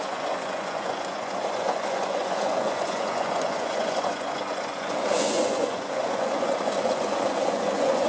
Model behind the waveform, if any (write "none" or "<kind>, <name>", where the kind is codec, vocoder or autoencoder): vocoder, Vocos